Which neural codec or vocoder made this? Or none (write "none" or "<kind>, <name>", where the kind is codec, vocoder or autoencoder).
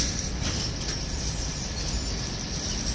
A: none